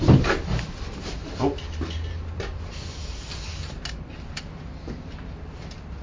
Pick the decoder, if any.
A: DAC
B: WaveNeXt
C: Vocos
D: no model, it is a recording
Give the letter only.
D